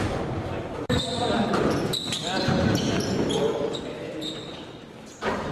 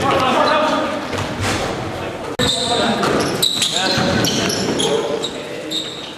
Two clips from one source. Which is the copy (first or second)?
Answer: first